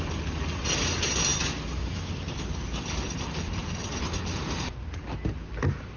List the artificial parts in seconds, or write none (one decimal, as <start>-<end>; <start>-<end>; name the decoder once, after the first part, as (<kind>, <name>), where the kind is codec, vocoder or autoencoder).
4.1-4.7 (vocoder, BigVGAN v2)